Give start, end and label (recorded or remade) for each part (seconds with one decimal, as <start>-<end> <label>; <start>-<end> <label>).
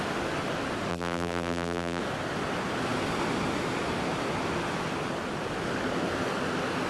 0.0-0.9 recorded; 0.9-2.0 remade; 2.0-6.9 recorded